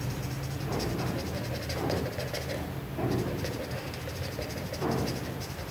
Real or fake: real